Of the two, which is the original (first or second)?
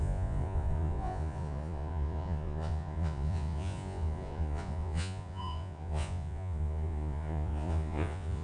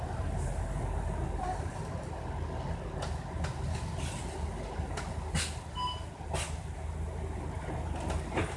second